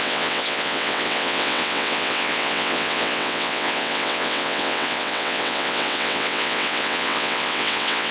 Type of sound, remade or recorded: remade